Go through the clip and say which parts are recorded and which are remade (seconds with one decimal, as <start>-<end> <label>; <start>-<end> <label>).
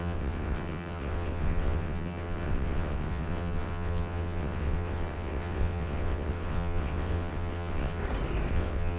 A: 0.0-8.0 remade; 8.0-8.5 recorded; 8.5-9.0 remade